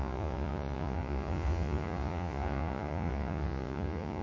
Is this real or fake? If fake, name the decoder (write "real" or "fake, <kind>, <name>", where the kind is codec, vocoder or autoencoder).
fake, vocoder, Vocos